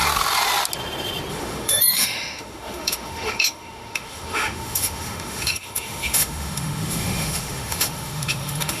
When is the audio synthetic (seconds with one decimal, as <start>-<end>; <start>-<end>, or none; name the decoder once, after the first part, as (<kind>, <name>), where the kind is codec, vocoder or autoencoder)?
1.3-8.8 (autoencoder, DAC-VAE)